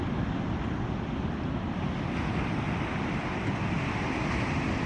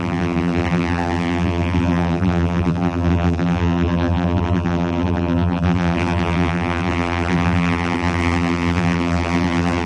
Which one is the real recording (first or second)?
first